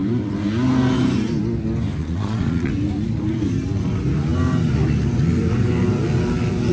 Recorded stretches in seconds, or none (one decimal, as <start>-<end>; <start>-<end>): 0.0-2.0; 2.7-6.7